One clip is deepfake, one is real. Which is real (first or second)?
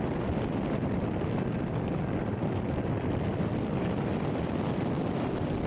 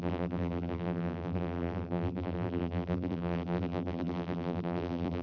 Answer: first